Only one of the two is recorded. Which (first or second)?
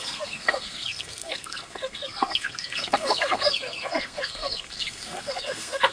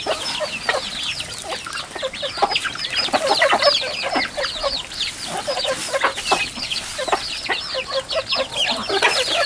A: second